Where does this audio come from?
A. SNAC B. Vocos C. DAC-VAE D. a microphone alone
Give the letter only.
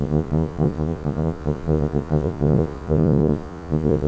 B